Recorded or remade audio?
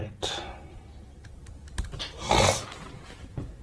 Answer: recorded